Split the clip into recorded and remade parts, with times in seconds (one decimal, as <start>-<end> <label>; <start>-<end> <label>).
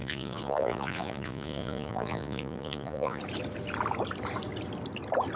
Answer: 0.0-3.2 remade; 3.2-5.4 recorded